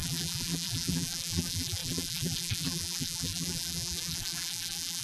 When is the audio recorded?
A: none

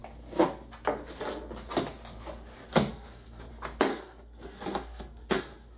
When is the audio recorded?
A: 0.0-2.9; 3.5-3.9

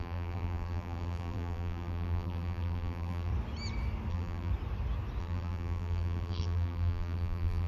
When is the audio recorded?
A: 3.3-4.1; 4.5-5.2

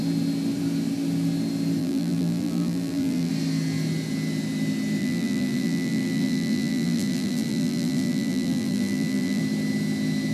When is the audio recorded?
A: 0.0-1.8; 3.3-5.0; 9.4-10.3

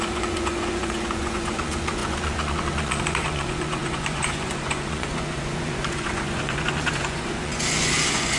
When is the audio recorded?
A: none